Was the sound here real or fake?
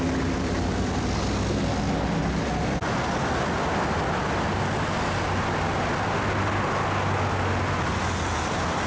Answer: real